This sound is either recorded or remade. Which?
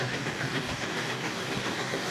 remade